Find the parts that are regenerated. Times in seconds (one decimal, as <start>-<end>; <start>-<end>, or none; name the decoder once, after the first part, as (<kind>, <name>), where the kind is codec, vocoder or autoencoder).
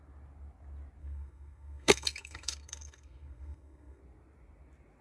1.0-4.0 (codec, SNAC)